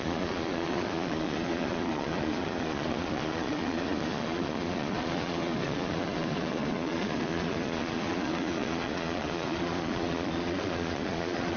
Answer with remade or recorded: remade